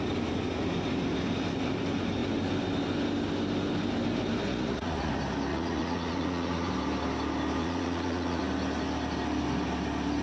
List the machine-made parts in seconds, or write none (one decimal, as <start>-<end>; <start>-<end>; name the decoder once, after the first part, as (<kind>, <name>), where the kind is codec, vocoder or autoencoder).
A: 4.5-5.1 (vocoder, Vocos); 5.5-6.7; 7.6-8.4